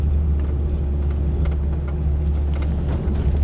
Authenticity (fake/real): real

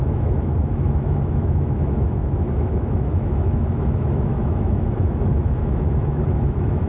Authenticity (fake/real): fake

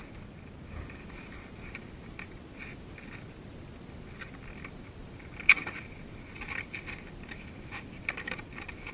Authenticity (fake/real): real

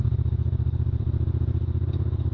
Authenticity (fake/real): fake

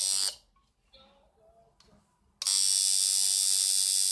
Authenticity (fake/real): real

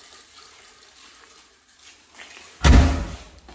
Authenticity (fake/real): real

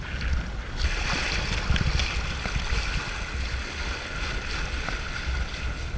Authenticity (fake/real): real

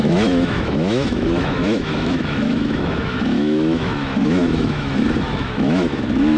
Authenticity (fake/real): fake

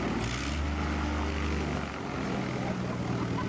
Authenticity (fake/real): real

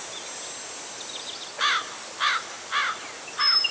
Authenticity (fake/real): real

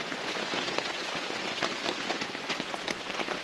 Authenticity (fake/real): fake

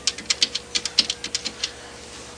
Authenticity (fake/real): real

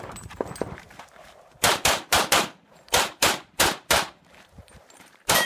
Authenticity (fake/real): fake